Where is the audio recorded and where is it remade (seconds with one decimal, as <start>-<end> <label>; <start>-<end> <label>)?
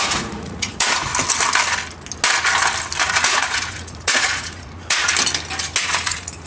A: 0.0-1.1 remade; 1.1-3.0 recorded; 3.0-5.1 remade; 5.1-5.8 recorded; 5.8-6.5 remade